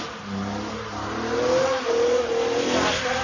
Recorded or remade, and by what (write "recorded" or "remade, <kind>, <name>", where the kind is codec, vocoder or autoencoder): recorded